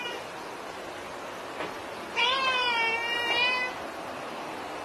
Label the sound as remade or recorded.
recorded